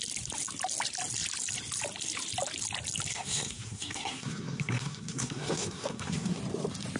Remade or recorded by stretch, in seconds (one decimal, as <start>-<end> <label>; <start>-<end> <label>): 0.0-3.1 recorded; 3.1-6.4 remade; 6.4-7.0 recorded

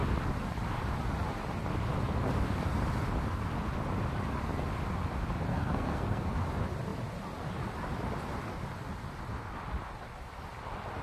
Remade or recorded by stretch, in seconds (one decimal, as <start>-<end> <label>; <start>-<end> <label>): 0.0-5.5 recorded; 5.5-6.3 remade; 6.3-11.0 recorded

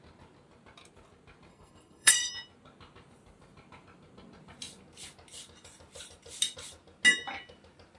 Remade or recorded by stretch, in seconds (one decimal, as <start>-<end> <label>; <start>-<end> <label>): 0.0-1.5 recorded; 1.5-2.3 remade; 2.3-8.0 recorded

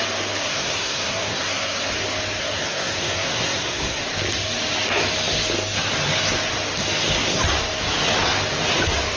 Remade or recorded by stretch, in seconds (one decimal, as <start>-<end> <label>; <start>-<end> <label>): 0.0-0.4 recorded; 0.4-1.9 remade; 1.9-2.4 recorded; 2.4-4.0 remade; 4.0-9.2 recorded

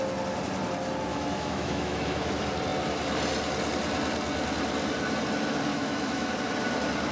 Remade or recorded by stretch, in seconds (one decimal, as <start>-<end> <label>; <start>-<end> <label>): 0.0-1.1 recorded; 1.1-2.3 remade; 2.3-5.7 recorded; 5.7-6.3 remade; 6.3-7.1 recorded

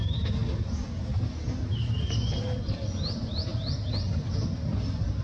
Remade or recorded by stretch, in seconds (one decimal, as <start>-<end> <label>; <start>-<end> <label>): 0.0-0.4 remade; 0.4-2.6 recorded; 2.6-3.5 remade; 3.5-5.2 recorded

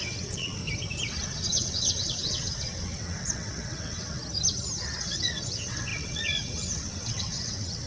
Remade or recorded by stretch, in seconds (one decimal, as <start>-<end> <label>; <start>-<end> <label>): 0.0-0.6 remade; 0.6-1.1 recorded; 1.1-4.2 remade; 4.2-5.0 recorded; 5.0-7.9 remade

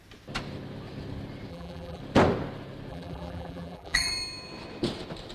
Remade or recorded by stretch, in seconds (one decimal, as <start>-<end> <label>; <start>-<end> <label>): 0.0-1.5 recorded; 1.5-2.0 remade; 2.0-2.9 recorded; 2.9-4.1 remade; 4.1-5.3 recorded